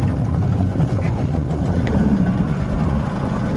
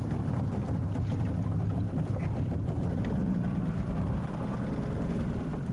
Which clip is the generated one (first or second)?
first